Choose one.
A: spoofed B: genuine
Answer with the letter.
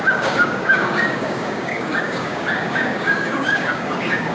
A